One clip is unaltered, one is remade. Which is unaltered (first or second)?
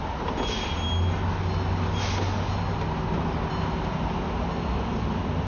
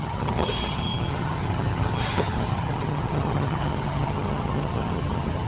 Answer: first